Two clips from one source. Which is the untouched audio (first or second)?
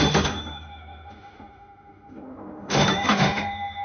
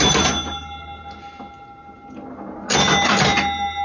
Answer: second